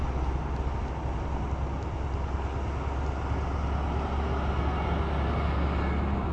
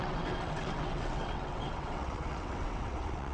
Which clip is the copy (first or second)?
second